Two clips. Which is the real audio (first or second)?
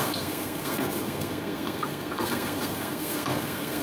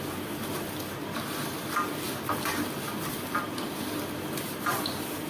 second